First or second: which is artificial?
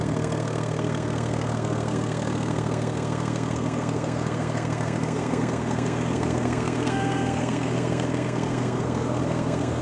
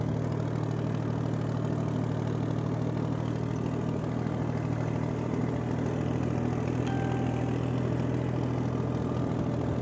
first